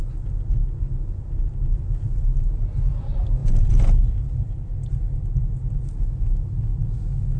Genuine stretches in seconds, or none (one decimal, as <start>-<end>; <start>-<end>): 0.0-7.4